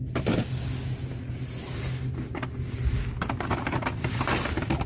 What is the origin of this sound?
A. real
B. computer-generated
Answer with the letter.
A